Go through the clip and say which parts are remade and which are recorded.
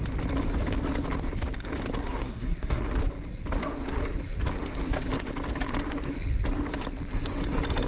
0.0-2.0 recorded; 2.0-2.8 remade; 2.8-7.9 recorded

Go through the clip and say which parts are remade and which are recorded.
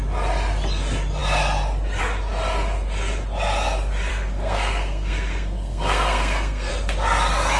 0.0-4.1 recorded; 4.1-6.7 remade; 6.7-7.6 recorded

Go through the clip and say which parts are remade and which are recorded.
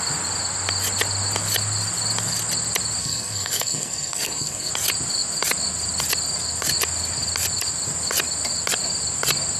0.0-3.0 recorded; 3.0-4.7 remade; 4.7-9.6 recorded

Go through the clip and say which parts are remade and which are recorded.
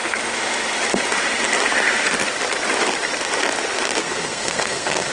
0.0-4.0 recorded; 4.0-5.1 remade